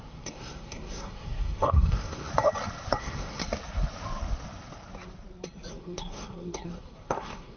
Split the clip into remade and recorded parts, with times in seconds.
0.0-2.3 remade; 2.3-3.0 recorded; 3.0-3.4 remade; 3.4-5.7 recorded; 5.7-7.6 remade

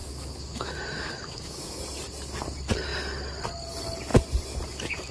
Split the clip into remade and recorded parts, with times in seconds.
0.0-1.8 remade; 1.8-5.1 recorded

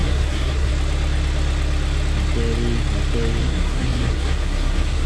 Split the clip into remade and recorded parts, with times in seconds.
0.0-0.7 remade; 0.7-3.4 recorded; 3.4-5.1 remade